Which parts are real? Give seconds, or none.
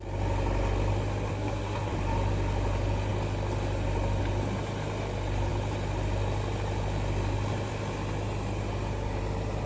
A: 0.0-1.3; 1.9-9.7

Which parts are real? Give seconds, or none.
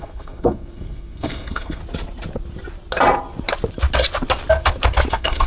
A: 1.8-5.1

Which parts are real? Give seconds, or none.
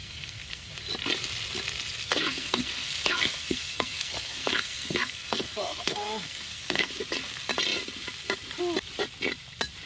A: 0.7-2.0; 6.9-9.9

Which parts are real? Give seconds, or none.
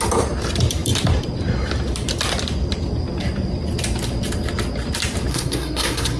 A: 0.0-5.3